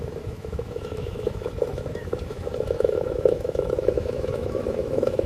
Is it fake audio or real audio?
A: fake